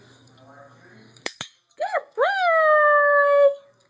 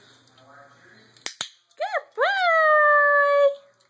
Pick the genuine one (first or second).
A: second